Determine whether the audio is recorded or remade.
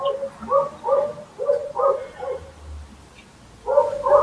recorded